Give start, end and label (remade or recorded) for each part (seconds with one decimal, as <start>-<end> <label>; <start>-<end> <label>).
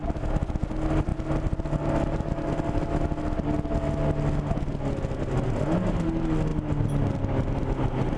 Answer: 0.0-8.2 recorded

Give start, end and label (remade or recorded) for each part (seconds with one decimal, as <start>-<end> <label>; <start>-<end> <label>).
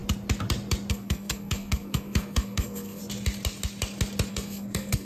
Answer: 0.0-0.9 recorded; 0.9-3.0 remade; 3.0-4.3 recorded; 4.3-5.0 remade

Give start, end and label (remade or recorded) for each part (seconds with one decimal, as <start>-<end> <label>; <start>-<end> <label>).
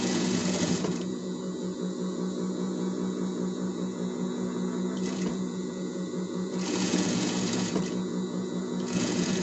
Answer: 0.0-9.4 remade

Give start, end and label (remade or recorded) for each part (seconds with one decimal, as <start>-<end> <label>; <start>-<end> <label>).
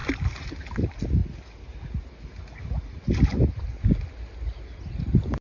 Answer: 0.0-0.6 remade; 0.6-5.4 recorded